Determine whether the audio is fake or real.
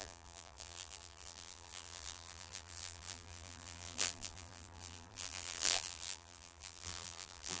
fake